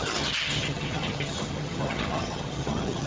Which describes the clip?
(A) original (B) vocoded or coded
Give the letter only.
B